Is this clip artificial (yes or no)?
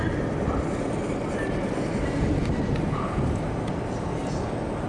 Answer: no